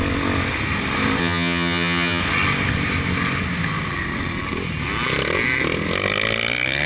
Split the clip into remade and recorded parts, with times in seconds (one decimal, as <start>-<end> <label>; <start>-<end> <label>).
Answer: 0.0-1.2 recorded; 1.2-2.2 remade; 2.2-6.9 recorded